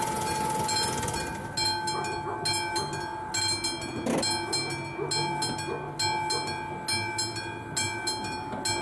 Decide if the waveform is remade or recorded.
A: recorded